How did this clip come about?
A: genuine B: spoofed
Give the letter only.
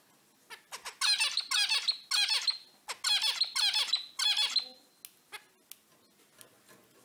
A